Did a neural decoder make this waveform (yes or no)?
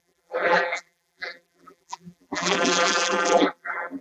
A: yes